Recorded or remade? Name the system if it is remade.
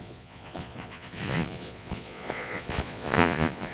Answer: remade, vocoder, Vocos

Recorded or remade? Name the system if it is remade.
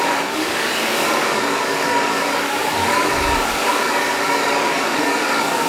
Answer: remade, codec, DAC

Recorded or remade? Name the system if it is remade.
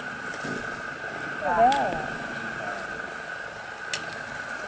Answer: recorded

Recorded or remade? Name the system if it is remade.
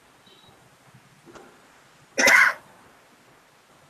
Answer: recorded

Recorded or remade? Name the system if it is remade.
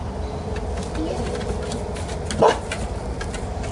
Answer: recorded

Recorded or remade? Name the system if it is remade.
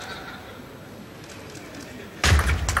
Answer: recorded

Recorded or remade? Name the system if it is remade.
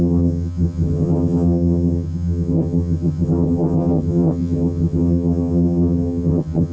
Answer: remade, vocoder, HiFi-GAN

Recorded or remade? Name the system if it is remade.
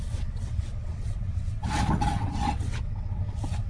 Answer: remade, vocoder, WaveNeXt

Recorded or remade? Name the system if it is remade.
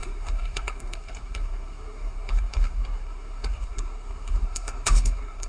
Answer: remade, codec, SNAC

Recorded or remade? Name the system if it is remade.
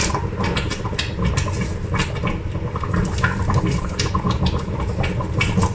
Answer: recorded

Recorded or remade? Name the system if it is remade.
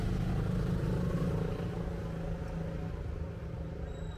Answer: recorded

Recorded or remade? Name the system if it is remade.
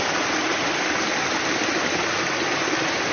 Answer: recorded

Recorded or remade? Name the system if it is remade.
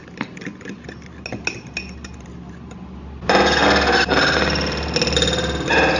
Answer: recorded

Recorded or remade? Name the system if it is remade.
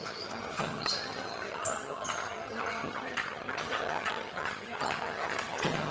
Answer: remade, vocoder, HiFi-GAN